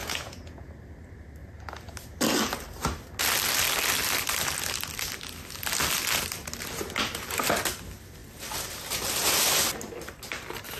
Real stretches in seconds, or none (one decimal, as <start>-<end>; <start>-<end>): 0.7-10.8